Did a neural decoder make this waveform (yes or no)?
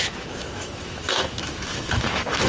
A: yes